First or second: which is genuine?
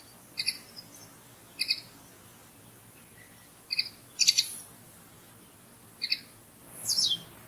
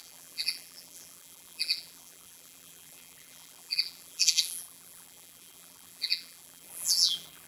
first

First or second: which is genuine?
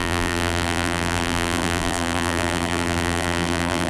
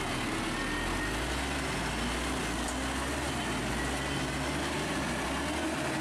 second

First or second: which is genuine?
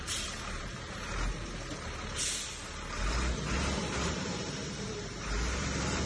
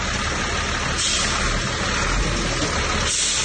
second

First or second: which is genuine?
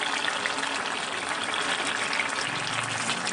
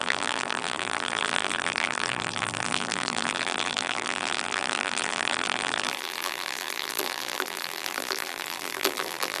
first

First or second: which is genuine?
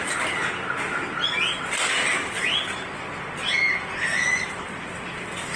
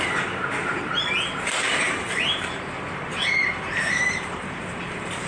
first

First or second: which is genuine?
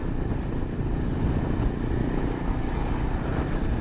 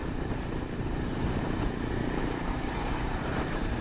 first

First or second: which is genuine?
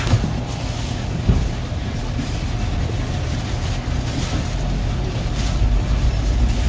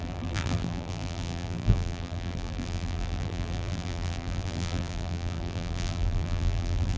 first